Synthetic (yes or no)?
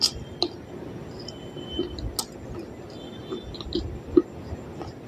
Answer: no